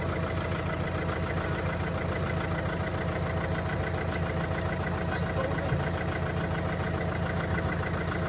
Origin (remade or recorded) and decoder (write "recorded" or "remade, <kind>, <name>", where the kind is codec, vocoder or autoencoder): recorded